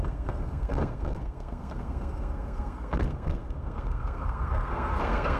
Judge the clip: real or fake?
fake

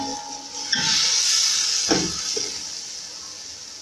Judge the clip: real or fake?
real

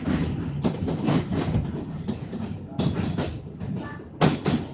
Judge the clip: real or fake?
real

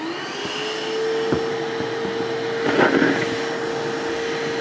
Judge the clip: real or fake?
real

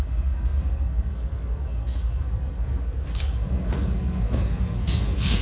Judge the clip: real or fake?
fake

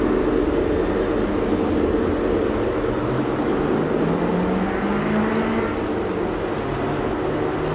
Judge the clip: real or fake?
real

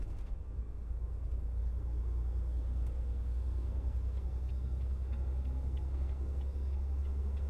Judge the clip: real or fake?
fake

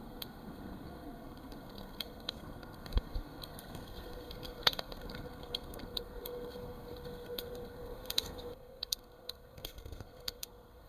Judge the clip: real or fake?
fake